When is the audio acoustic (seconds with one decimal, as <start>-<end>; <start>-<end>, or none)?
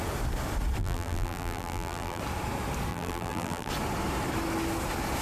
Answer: 0.0-0.8; 2.2-2.9; 3.7-5.2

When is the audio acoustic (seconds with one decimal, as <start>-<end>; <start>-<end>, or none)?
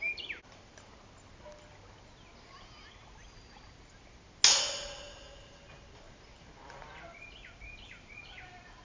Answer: 0.0-8.8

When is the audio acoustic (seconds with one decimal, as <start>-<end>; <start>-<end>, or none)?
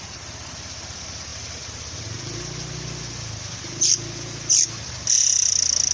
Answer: 0.0-5.9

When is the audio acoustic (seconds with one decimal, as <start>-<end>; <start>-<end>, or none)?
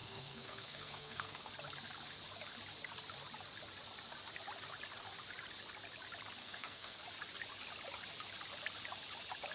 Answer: 1.5-6.4; 7.0-9.5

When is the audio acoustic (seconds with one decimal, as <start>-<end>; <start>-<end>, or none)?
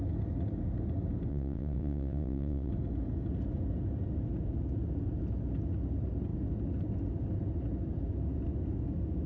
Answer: 0.0-1.3; 2.7-9.3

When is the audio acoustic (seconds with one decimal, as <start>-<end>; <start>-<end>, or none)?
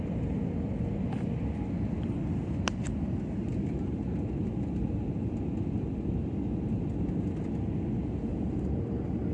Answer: 0.0-9.3